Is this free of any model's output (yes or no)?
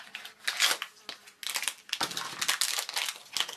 yes